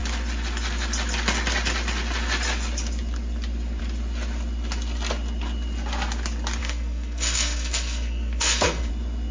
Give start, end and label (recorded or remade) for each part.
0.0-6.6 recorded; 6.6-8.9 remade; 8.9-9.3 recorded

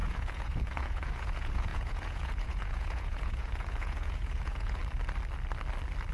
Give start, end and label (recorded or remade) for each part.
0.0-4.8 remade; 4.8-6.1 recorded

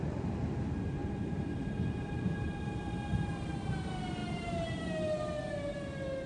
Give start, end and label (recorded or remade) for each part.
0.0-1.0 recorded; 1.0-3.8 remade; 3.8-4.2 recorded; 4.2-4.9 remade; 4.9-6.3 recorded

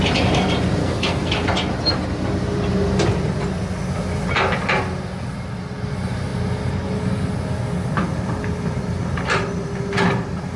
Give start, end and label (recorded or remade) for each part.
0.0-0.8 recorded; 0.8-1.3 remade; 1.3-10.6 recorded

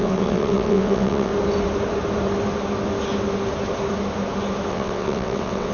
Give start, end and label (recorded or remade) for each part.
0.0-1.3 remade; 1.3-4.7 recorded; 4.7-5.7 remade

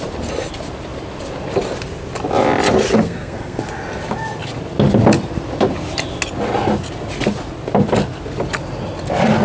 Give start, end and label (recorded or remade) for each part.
0.0-2.9 recorded; 2.9-3.6 remade; 3.6-9.4 recorded

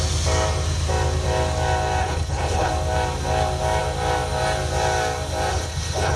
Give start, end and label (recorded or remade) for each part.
0.0-2.0 recorded; 2.0-2.7 remade; 2.7-5.5 recorded; 5.5-6.2 remade

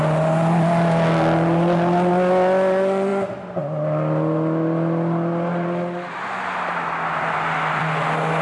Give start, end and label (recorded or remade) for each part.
0.0-8.4 recorded